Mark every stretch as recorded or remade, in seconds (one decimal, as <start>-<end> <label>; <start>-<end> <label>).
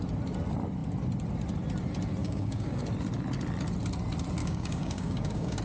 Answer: 0.0-2.2 recorded; 2.2-2.8 remade; 2.8-4.4 recorded; 4.4-5.6 remade